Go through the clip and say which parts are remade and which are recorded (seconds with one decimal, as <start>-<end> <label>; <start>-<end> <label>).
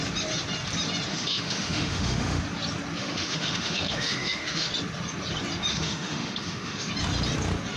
0.0-1.1 recorded; 1.1-2.4 remade; 2.4-3.0 recorded; 3.0-4.7 remade; 4.7-5.7 recorded; 5.7-6.9 remade; 6.9-7.8 recorded